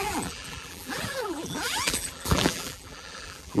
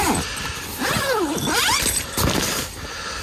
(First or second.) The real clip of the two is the second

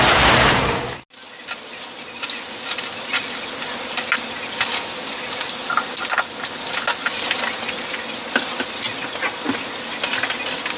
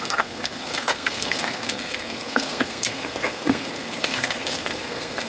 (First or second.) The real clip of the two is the first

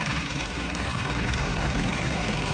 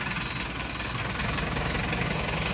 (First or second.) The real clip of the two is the second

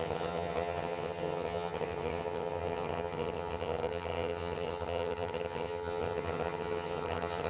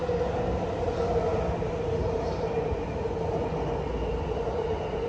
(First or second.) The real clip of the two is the second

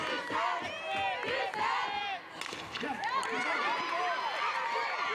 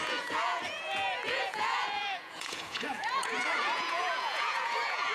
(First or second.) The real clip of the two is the first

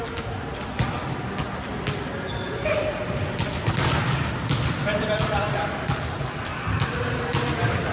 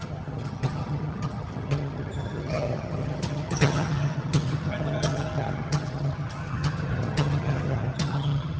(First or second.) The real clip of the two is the first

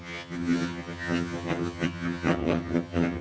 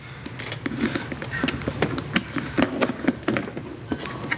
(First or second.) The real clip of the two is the second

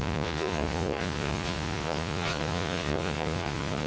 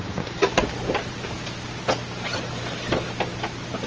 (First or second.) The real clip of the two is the second